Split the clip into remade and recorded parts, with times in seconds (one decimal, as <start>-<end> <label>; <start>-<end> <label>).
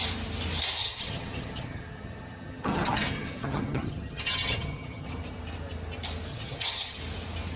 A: 0.0-0.8 recorded; 0.8-5.1 remade; 5.1-6.3 recorded; 6.3-7.0 remade; 7.0-7.6 recorded